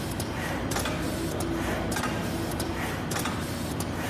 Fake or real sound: real